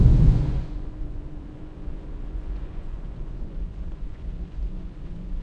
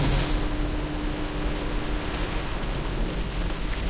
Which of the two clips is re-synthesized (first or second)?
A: first